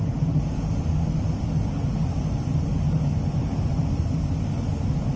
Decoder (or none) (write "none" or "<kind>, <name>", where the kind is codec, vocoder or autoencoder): none